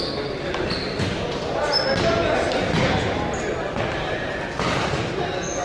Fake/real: real